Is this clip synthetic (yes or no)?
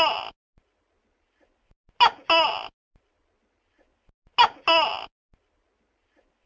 no